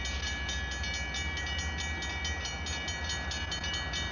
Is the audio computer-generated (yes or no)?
no